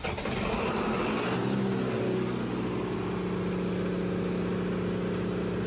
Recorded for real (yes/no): yes